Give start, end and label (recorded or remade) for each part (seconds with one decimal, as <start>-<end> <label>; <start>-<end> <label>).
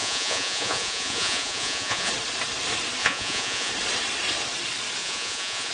0.0-2.1 remade; 2.1-3.0 recorded; 3.0-3.7 remade; 3.7-5.0 recorded; 5.0-5.7 remade